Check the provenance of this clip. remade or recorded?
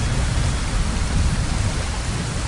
recorded